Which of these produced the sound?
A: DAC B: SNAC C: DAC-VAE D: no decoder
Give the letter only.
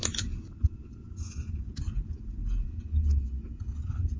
D